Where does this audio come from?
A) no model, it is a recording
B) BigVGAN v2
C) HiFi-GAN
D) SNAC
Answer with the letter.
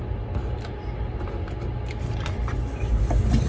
A